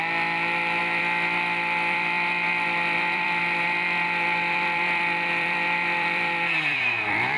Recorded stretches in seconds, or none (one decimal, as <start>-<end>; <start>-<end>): none